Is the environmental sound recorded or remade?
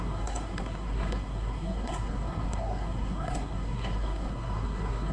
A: remade